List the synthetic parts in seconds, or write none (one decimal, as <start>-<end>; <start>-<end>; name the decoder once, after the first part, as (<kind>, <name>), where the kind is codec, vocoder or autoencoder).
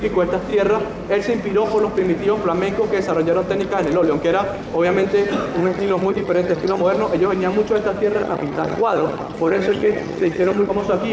5.6-6.8 (vocoder, HiFi-GAN); 8.2-10.7